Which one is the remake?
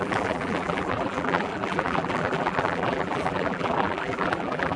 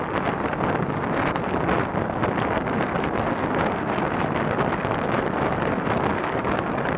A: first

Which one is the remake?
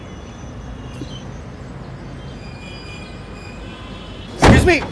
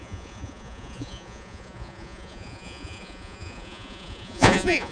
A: second